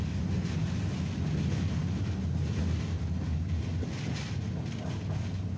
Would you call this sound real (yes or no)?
yes